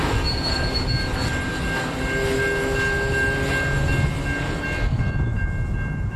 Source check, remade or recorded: recorded